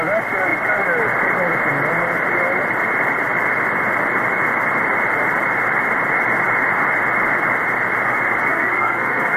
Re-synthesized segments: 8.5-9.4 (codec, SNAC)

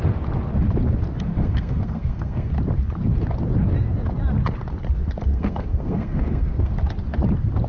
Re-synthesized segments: 1.3-2.5 (codec, SNAC); 5.3-6.7

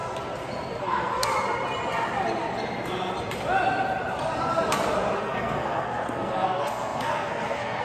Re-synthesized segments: 0.8-1.3 (codec, SNAC); 5.2-7.8